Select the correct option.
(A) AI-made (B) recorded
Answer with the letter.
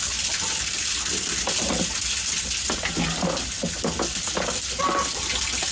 B